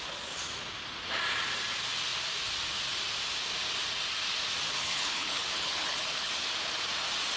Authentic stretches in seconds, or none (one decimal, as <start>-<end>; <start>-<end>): 0.0-4.8; 6.3-7.4